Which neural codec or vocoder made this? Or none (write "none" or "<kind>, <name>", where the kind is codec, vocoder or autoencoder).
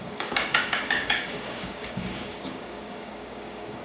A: codec, DAC